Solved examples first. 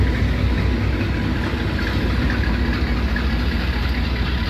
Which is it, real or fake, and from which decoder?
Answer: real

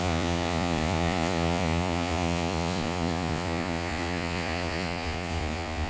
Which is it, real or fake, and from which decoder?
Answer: fake, vocoder, Vocos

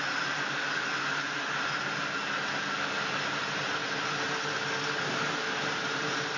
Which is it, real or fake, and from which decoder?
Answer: real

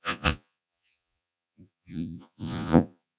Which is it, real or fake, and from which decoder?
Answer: fake, vocoder, Vocos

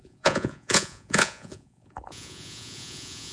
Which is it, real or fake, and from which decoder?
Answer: fake, vocoder, Vocos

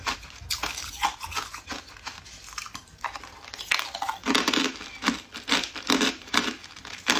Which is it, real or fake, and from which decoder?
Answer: real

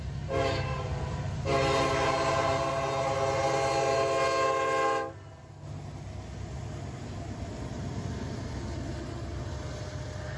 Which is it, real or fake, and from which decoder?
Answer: real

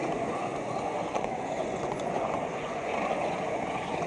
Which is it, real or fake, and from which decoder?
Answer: fake, vocoder, Vocos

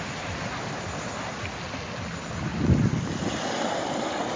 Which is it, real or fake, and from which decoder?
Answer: real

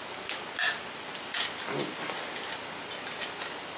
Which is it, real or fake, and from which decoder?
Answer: real